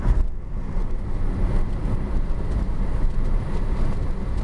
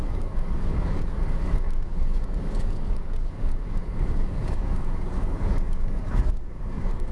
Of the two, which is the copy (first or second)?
second